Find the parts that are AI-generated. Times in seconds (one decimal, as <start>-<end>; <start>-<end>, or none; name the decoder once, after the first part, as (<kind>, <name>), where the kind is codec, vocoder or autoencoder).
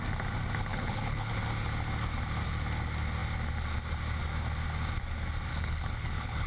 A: 0.7-1.3 (codec, HILCodec); 5.5-6.5